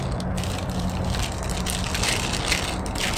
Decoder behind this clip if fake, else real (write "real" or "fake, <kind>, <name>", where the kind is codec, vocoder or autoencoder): real